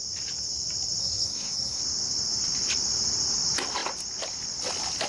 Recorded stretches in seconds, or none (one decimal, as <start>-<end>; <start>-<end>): 0.0-1.0; 1.8-5.1